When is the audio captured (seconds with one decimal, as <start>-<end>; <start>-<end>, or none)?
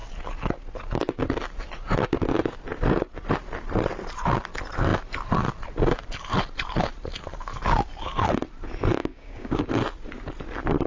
0.0-9.0; 9.6-10.9